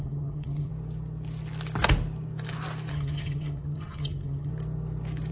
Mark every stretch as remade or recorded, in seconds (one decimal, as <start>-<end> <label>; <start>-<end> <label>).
0.0-0.7 remade; 0.7-2.9 recorded; 2.9-4.5 remade; 4.5-5.3 recorded